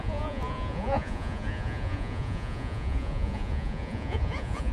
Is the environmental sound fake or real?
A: fake